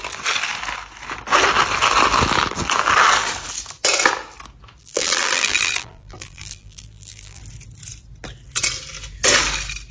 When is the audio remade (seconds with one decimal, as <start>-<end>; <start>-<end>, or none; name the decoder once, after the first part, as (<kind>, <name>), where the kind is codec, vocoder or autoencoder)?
4.8-7.4 (vocoder, BigVGAN v2)